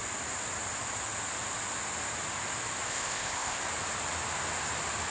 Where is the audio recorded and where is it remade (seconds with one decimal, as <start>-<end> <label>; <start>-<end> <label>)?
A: 0.0-2.9 recorded; 2.9-3.6 remade; 3.6-5.1 recorded

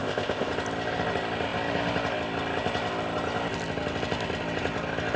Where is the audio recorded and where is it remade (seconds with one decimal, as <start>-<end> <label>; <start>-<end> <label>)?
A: 0.0-0.5 remade; 0.5-5.2 recorded

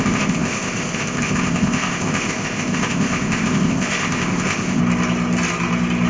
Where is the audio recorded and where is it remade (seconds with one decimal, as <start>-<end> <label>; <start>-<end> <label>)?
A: 0.0-4.8 remade; 4.8-6.1 recorded